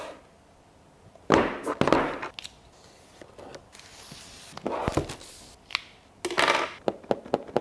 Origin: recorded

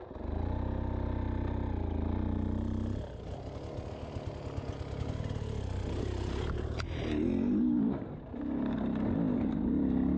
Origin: recorded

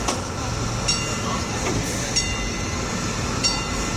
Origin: recorded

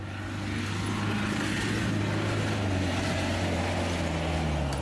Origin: recorded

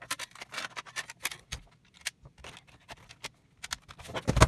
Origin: recorded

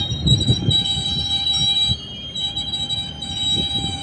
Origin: recorded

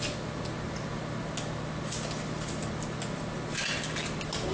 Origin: recorded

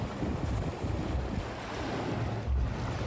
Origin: recorded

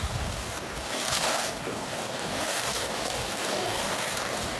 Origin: remade